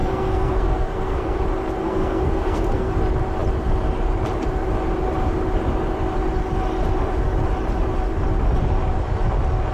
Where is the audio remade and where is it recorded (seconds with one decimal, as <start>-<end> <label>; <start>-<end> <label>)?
0.0-1.4 remade; 1.4-1.8 recorded; 1.8-2.9 remade; 2.9-9.7 recorded